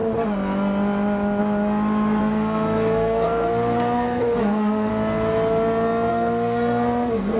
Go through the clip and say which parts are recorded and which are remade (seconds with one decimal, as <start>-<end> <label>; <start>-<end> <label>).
0.0-2.2 recorded; 2.2-4.9 remade; 4.9-6.1 recorded; 6.1-7.4 remade